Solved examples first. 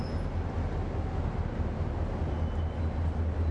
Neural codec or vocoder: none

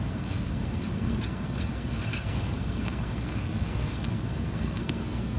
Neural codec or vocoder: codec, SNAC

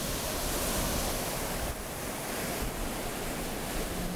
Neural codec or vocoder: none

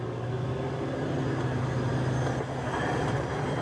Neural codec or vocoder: none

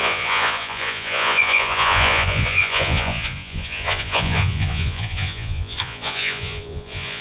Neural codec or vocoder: vocoder, Vocos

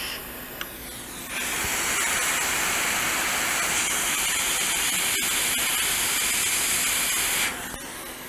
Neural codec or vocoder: none